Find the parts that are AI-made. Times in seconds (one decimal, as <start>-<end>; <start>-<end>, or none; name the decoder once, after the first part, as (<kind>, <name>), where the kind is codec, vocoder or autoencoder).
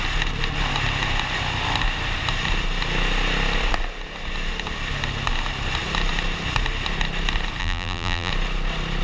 7.6-8.3 (vocoder, BigVGAN v2)